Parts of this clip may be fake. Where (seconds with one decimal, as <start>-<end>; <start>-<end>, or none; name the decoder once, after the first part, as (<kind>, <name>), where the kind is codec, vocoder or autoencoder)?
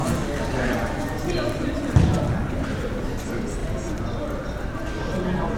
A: 0.0-3.1 (vocoder, BigVGAN v2)